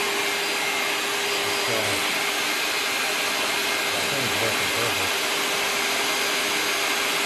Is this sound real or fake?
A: real